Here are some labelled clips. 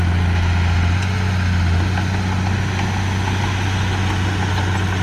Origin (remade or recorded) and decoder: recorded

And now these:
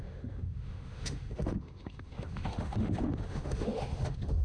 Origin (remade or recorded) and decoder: remade, autoencoder, DAC-VAE